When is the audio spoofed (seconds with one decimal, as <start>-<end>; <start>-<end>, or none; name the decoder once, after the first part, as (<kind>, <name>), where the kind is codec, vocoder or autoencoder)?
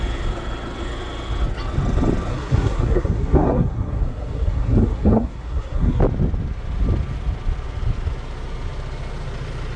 2.3-6.0 (codec, SNAC)